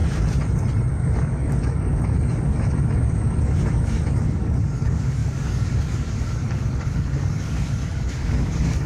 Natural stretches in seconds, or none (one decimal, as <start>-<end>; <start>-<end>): 0.0-0.9